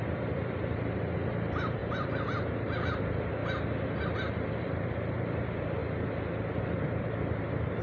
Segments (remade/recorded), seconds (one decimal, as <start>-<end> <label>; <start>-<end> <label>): 0.0-3.4 remade; 3.4-4.5 recorded; 4.5-5.8 remade; 5.8-6.6 recorded; 6.6-7.8 remade

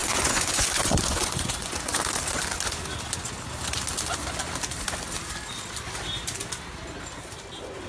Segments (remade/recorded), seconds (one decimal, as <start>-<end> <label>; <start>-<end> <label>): 0.0-2.0 remade; 2.0-7.9 recorded